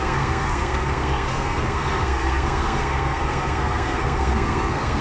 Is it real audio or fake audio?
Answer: fake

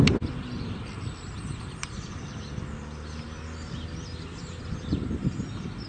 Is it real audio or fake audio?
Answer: real